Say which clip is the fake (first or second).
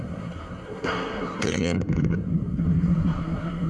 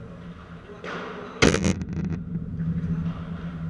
first